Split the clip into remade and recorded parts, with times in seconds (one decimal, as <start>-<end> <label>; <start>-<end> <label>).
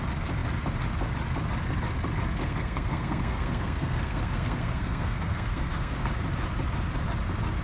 0.0-2.4 recorded; 2.4-6.1 remade; 6.1-7.6 recorded